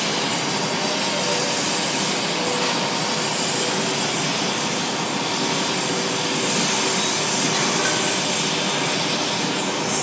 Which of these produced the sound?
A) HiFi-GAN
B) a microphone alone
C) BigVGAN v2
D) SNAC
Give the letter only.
B